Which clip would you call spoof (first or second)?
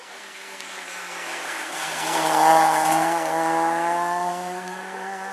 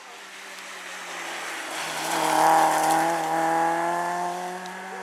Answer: first